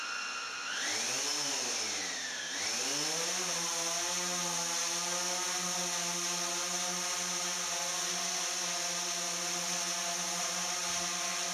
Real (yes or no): yes